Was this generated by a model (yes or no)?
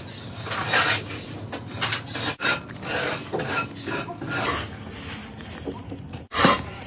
no